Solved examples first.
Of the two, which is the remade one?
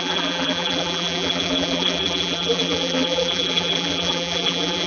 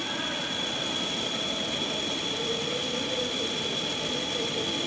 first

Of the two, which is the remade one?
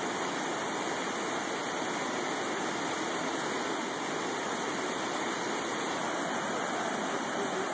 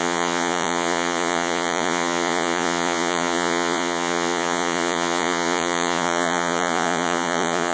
second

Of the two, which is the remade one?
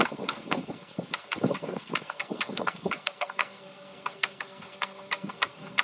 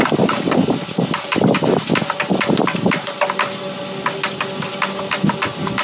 first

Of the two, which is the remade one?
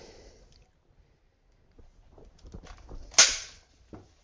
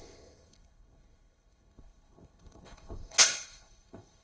second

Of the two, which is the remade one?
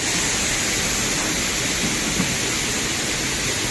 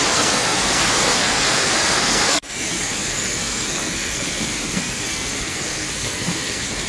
second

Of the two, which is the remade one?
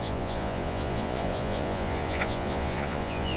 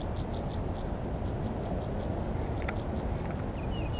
first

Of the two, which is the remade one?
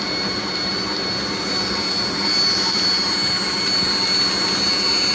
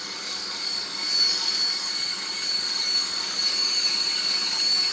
second